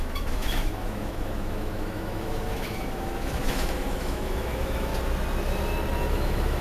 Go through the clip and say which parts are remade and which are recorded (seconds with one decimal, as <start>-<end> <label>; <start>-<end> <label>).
0.0-4.9 remade; 4.9-6.1 recorded; 6.1-6.6 remade